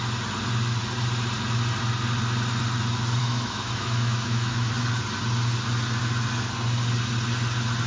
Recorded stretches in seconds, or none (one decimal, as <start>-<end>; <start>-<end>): 0.0-3.2; 4.7-7.9